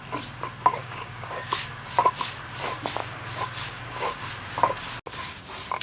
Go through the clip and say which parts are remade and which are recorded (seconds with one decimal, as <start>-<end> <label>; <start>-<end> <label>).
0.0-0.8 recorded; 0.8-1.6 remade; 1.6-3.0 recorded; 3.0-4.2 remade; 4.2-5.8 recorded